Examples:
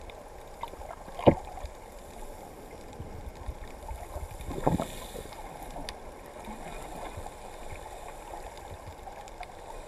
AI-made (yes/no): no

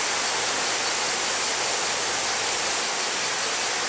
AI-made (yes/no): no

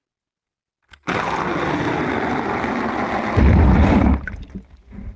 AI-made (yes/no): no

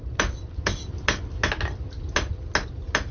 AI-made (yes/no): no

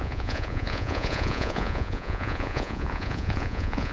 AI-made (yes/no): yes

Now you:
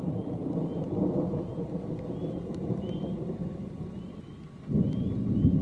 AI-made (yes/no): no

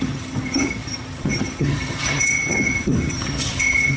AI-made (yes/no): yes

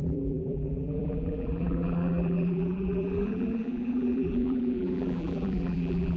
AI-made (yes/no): yes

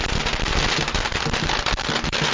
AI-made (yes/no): no